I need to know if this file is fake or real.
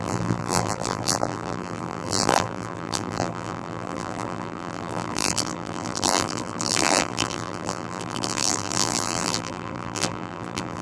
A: fake